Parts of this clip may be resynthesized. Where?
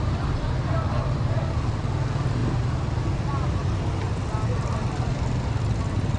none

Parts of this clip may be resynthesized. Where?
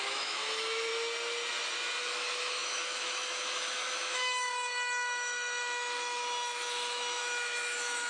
0.0-0.9 (autoencoder, DAC-VAE); 2.0-8.1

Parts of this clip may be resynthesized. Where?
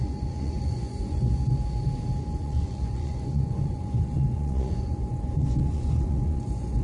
0.0-1.4 (vocoder, Vocos); 2.4-6.8